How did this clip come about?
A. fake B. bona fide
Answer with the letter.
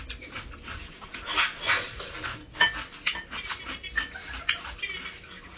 B